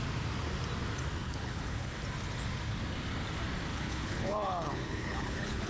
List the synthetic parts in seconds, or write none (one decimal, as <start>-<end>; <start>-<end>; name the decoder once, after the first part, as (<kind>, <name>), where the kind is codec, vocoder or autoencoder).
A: 1.2-1.9 (codec, HILCodec); 3.7-5.7